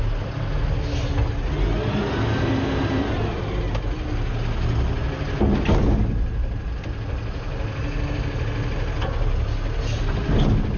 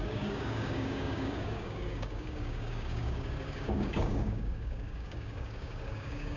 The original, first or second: first